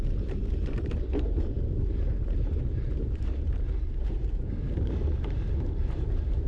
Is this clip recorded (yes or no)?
no